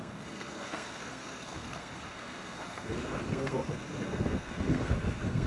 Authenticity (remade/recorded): remade